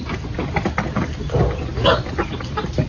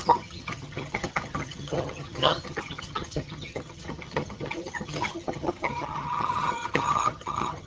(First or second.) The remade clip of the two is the second